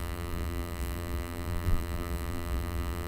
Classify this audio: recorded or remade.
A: remade